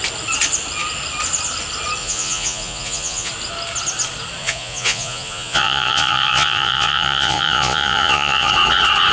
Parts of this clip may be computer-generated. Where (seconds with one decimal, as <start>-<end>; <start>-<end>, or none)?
2.0-3.3; 4.4-8.5